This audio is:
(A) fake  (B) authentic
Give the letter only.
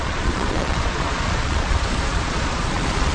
A